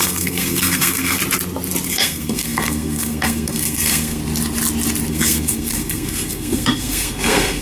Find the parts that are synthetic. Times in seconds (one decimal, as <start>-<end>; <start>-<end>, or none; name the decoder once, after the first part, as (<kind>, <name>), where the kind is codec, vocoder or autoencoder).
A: 0.0-1.2 (codec, SNAC); 1.9-4.2; 5.1-7.6